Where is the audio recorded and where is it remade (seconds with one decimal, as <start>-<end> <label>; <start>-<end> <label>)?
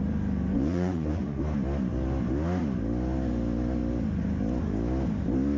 0.0-0.5 recorded; 0.5-1.4 remade; 1.4-5.6 recorded